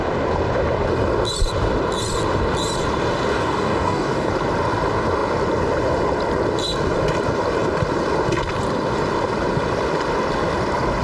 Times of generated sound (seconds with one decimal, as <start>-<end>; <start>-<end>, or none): 3.3-4.3